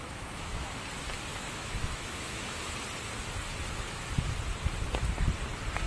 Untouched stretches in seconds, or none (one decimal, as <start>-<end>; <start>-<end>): 0.8-1.3; 2.7-5.9